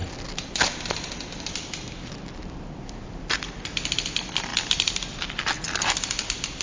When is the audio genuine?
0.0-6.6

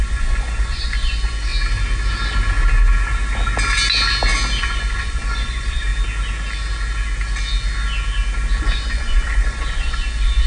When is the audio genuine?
1.5-4.6; 5.9-8.6

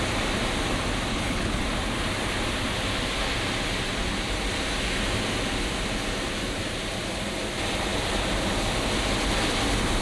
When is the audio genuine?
0.0-1.1; 1.6-10.0

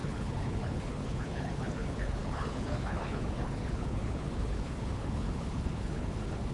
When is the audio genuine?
none

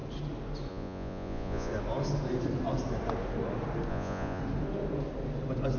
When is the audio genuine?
0.0-0.7; 1.7-3.9; 4.4-5.8

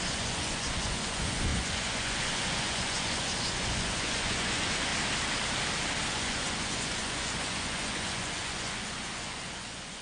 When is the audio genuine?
4.9-6.1

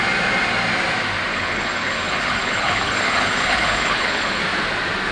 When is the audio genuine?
0.0-1.3; 4.4-5.1

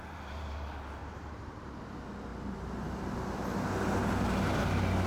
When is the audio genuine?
0.0-1.0; 1.8-2.3; 3.7-5.1